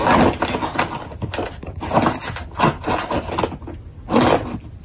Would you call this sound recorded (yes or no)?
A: yes